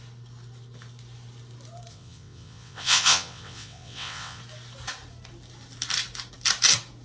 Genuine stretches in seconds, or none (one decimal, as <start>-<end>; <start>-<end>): 0.0-1.9; 4.4-7.0